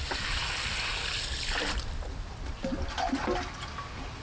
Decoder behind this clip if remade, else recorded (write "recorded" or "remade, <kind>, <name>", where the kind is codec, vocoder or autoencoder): recorded